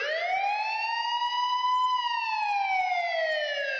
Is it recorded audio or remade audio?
recorded